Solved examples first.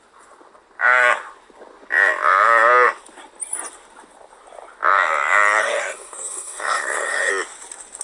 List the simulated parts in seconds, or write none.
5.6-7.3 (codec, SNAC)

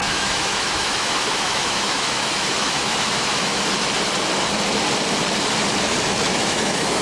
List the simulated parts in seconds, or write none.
0.0-3.6 (autoencoder, DAC-VAE); 6.3-7.0

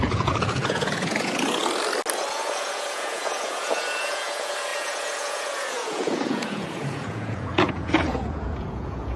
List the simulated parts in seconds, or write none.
0.0-1.6 (vocoder, Vocos); 2.3-9.2

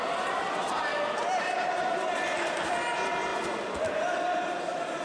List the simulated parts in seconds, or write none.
0.9-1.4 (vocoder, BigVGAN v2)